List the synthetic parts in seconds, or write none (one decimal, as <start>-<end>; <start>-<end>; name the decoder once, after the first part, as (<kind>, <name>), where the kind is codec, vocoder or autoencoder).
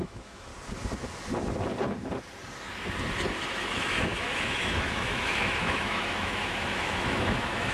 0.0-0.5 (autoencoder, DAC-VAE); 3.5-7.7